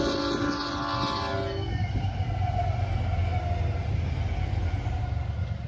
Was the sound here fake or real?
real